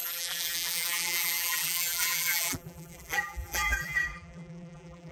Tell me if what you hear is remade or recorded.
remade